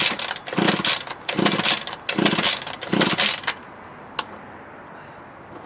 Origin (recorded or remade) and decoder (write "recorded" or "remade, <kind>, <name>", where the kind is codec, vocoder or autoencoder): recorded